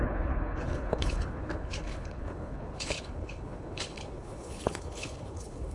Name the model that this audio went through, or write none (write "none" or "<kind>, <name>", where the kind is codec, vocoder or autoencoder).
codec, HILCodec